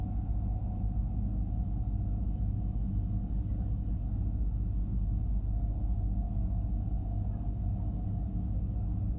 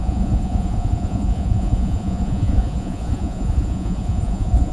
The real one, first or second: first